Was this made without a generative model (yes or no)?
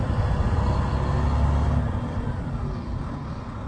yes